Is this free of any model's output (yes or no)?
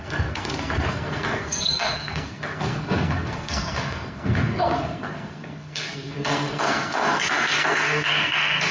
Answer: no